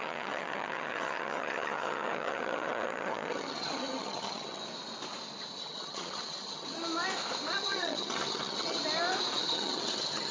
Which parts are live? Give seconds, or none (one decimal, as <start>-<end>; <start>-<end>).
4.6-5.6; 6.8-7.6; 8.8-9.4